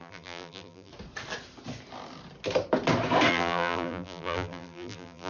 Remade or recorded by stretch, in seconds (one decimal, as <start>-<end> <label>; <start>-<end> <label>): 0.0-0.9 remade; 0.9-3.3 recorded; 3.3-5.3 remade